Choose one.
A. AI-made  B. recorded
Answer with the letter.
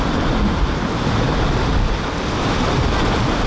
B